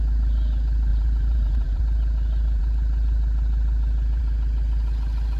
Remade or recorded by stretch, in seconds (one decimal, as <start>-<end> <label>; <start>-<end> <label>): 0.0-0.9 recorded; 0.9-1.8 remade; 1.8-5.4 recorded